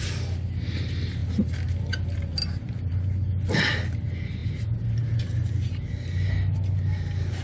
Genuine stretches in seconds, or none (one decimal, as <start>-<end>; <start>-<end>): 0.0-7.4